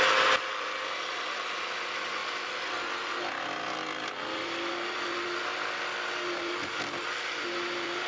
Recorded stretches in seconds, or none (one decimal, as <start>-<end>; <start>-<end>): 0.0-8.1